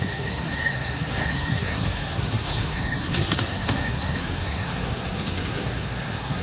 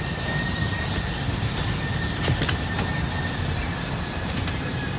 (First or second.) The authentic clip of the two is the second